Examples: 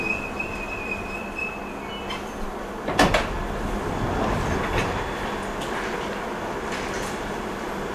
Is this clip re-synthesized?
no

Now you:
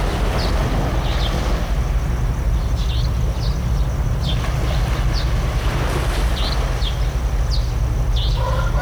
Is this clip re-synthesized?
no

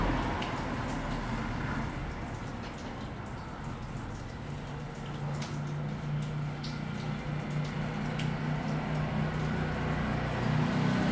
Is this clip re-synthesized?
no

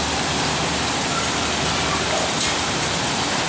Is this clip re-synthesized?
yes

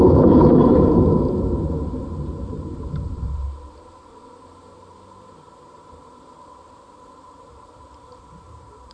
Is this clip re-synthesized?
yes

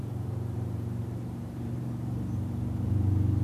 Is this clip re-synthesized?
yes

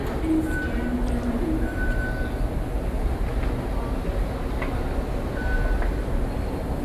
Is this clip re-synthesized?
no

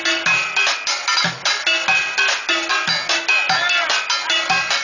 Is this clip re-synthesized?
no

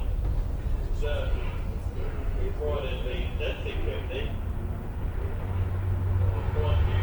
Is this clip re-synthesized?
no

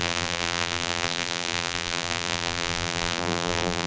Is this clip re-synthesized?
yes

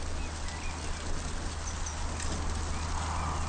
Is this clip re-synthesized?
no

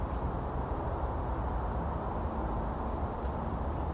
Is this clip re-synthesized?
no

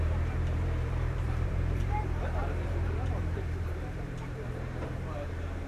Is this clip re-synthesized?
yes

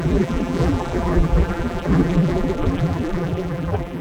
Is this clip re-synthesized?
yes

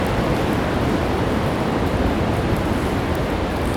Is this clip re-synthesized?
yes